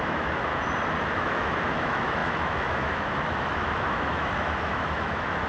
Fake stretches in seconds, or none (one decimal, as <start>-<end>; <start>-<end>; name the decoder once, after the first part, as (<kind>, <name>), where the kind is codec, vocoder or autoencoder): 0.0-0.5 (autoencoder, DAC-VAE); 1.0-5.5